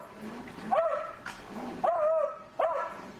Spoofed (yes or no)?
no